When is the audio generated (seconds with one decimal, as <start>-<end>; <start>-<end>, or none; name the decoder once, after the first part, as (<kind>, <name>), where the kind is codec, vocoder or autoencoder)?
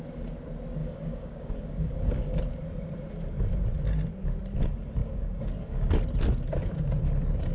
0.8-2.4 (codec, DAC); 5.0-5.9